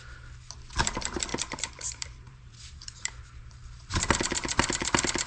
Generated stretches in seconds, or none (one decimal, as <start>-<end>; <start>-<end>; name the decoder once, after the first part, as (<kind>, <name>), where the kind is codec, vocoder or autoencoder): 1.3-3.8 (vocoder, BigVGAN v2)